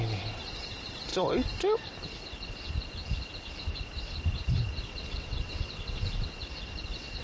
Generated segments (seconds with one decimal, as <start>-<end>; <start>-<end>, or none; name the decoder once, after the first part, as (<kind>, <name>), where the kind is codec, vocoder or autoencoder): 4.9-6.4 (vocoder, WaveNeXt)